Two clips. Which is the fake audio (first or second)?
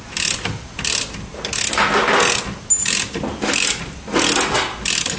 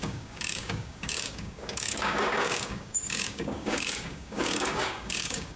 second